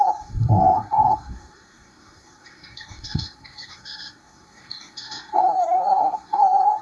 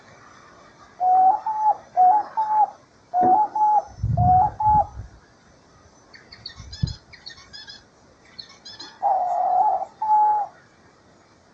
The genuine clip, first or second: second